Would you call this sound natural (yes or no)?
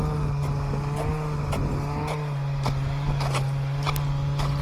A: yes